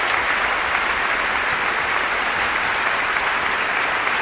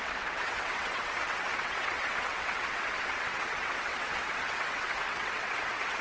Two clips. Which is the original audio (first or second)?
first